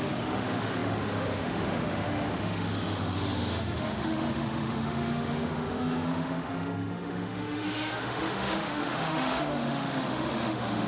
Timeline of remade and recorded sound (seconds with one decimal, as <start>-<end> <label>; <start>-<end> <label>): 0.0-10.9 remade